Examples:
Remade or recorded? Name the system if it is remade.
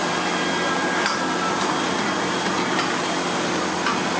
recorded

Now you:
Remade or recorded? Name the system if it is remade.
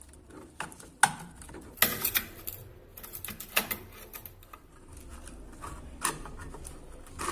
recorded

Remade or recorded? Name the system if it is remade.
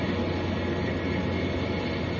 recorded